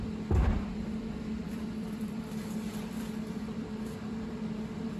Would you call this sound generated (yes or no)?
yes